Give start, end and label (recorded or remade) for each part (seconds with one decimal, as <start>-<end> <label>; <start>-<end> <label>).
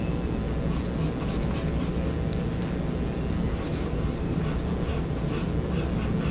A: 0.0-3.7 recorded; 3.7-4.4 remade; 4.4-4.9 recorded; 4.9-5.5 remade; 5.5-6.3 recorded